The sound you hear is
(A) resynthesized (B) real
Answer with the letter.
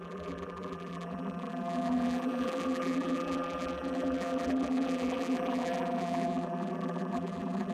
A